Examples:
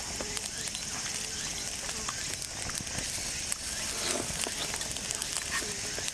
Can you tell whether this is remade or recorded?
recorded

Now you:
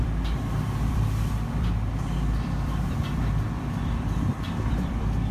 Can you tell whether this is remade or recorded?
remade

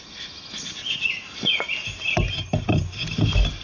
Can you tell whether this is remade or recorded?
recorded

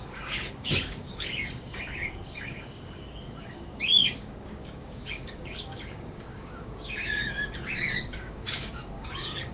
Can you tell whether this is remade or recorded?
remade